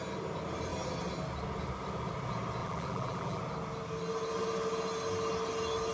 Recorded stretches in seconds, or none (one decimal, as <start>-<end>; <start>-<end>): 0.0-2.6; 3.4-5.9